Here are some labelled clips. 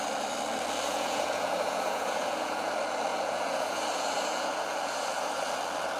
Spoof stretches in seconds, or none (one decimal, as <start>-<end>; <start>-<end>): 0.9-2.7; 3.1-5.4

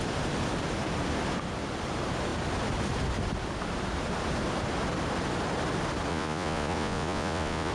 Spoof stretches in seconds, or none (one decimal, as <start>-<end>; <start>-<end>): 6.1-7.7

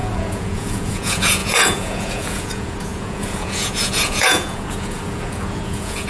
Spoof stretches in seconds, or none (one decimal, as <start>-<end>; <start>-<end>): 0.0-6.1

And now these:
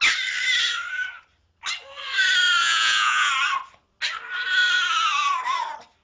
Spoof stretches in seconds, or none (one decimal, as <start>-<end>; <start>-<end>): 2.6-3.3

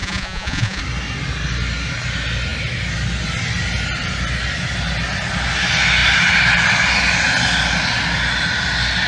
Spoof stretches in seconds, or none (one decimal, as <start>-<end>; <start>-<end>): 0.0-0.8